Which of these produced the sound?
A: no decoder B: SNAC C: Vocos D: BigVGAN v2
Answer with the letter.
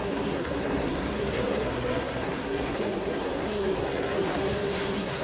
B